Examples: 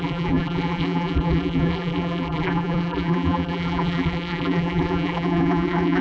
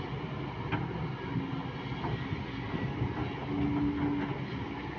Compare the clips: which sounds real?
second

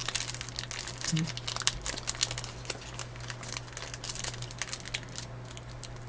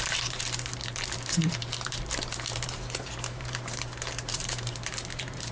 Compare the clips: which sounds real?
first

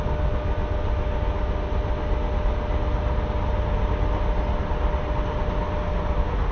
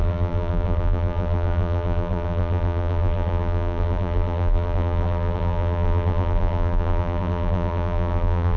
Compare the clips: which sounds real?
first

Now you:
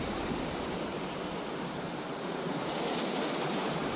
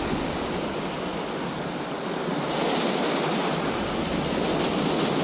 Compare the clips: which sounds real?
second